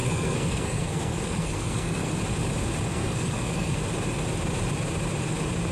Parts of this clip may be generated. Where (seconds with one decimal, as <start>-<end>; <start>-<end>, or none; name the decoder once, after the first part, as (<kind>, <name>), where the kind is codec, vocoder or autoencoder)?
0.0-2.1 (codec, SNAC); 2.9-3.8